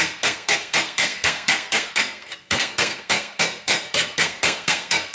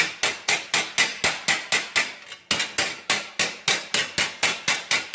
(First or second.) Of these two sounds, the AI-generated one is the first